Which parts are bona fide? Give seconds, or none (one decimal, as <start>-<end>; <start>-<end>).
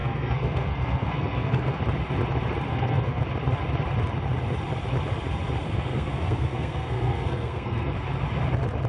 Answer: 1.8-2.7; 3.2-5.6; 7.9-8.9